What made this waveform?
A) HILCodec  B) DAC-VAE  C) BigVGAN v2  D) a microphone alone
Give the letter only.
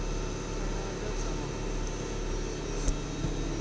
D